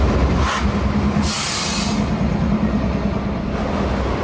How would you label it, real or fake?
real